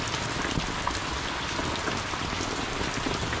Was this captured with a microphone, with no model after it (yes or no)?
yes